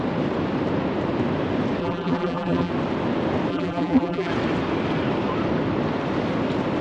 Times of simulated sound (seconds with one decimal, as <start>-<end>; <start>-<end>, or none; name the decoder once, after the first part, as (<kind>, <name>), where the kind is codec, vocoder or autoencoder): 1.8-2.7 (vocoder, BigVGAN v2); 3.5-4.3